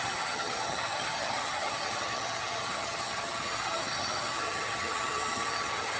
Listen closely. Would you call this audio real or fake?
fake